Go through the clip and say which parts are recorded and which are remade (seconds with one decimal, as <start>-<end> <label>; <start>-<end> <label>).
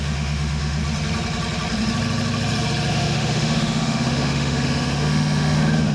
0.0-0.8 remade; 0.8-2.9 recorded; 2.9-5.9 remade